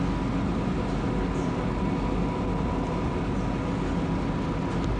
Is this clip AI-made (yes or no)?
no